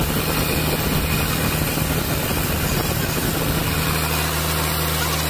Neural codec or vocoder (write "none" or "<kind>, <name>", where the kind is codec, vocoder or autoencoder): none